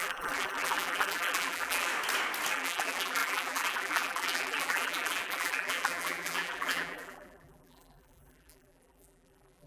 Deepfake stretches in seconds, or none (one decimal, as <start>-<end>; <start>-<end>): 0.0-1.9; 2.5-9.7